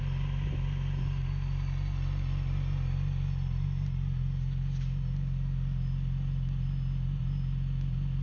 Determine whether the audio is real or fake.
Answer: real